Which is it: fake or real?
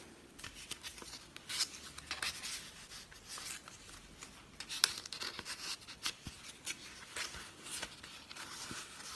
real